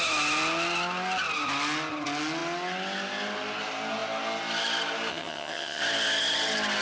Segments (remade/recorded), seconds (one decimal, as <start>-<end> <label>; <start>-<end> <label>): 0.0-5.1 recorded; 5.1-5.8 remade; 5.8-6.8 recorded